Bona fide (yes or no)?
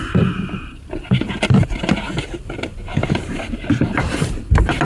yes